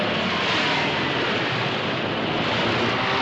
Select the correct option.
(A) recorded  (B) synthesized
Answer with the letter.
A